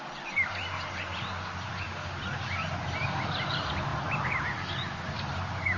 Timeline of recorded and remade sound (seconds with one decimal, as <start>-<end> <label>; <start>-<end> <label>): 0.0-5.8 recorded